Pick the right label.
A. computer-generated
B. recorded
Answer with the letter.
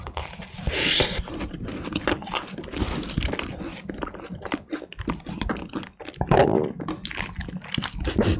B